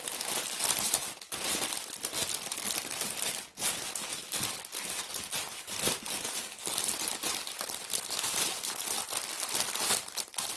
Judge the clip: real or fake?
real